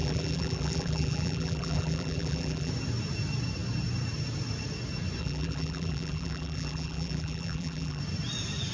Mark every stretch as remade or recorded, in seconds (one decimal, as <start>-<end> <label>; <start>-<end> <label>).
0.0-2.7 remade; 2.7-5.2 recorded; 5.2-8.0 remade; 8.0-8.7 recorded

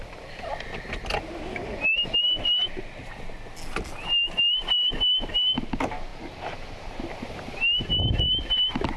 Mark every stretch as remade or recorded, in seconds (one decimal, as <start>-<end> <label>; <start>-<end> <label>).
0.0-4.6 recorded; 4.6-5.3 remade; 5.3-6.1 recorded; 6.1-7.2 remade; 7.2-9.0 recorded

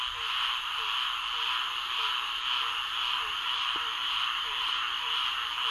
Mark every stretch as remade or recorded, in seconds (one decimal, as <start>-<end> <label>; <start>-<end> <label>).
0.0-2.6 recorded; 2.6-5.3 remade; 5.3-5.7 recorded

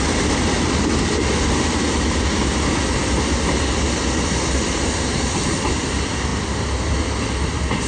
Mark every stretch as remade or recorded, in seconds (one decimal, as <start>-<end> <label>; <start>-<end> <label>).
0.0-7.9 recorded

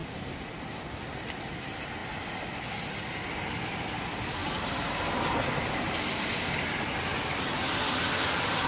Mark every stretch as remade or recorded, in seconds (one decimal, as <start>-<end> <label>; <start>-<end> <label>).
0.0-0.7 remade; 0.7-4.4 recorded; 4.4-5.9 remade; 5.9-8.7 recorded

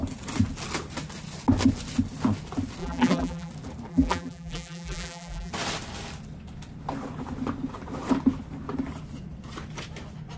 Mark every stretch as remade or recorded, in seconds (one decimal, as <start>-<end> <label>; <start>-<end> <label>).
0.0-2.8 recorded; 2.8-3.5 remade; 3.5-3.9 recorded; 3.9-5.5 remade; 5.5-10.4 recorded

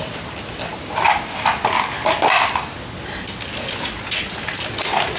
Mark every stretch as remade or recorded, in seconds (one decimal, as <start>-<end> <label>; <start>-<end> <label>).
0.0-5.2 recorded